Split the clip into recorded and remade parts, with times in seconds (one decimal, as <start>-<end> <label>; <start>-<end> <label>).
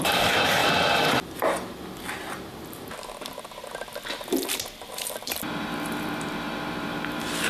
0.0-0.6 remade; 0.6-4.9 recorded; 4.9-7.5 remade